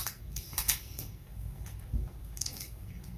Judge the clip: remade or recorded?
remade